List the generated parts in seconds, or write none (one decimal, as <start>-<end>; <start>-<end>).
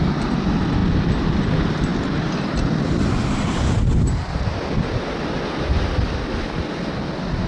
none